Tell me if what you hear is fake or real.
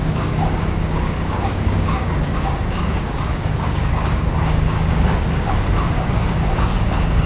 fake